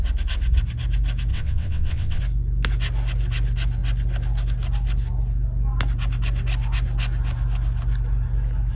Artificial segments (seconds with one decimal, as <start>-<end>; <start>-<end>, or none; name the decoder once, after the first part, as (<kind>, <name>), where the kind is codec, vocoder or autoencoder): 1.3-2.2 (vocoder, WaveNeXt)